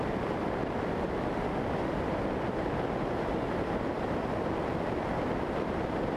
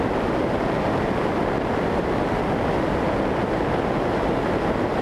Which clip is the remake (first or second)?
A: first